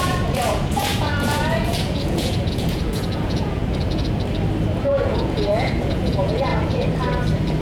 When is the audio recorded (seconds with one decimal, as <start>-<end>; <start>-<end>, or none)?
3.6-4.8; 6.5-7.6